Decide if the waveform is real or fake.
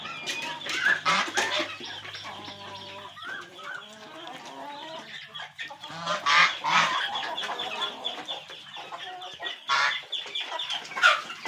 real